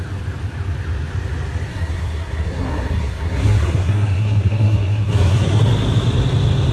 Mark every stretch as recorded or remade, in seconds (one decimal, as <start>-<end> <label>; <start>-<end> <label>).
0.0-1.7 recorded; 1.7-5.6 remade; 5.6-6.7 recorded